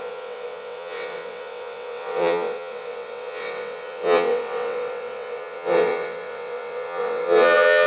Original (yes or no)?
no